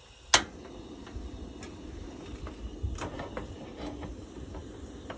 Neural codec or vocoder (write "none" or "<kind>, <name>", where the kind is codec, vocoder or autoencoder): none